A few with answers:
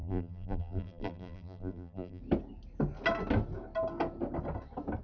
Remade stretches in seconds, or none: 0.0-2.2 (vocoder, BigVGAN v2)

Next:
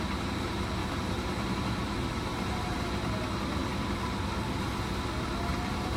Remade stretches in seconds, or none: 0.8-1.7 (vocoder, BigVGAN v2); 2.3-2.9; 5.5-6.0

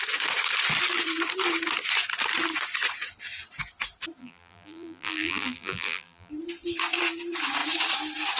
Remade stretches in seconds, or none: 4.2-6.3 (vocoder, BigVGAN v2)

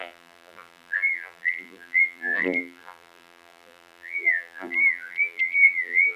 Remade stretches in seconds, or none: 0.0-6.2 (vocoder, BigVGAN v2)

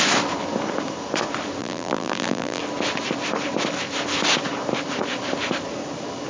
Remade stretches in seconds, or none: 1.6-2.6 (vocoder, BigVGAN v2)